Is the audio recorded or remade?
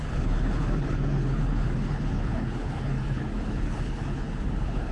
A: remade